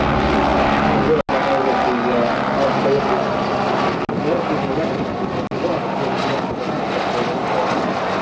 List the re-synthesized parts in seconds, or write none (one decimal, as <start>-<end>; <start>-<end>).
none